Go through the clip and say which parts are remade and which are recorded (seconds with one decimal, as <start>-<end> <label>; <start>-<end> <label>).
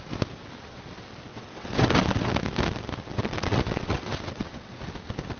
0.0-1.3 recorded; 1.3-2.3 remade; 2.3-3.1 recorded; 3.1-4.8 remade; 4.8-5.4 recorded